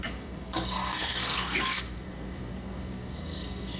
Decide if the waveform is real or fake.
fake